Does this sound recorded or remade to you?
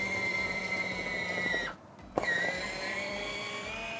remade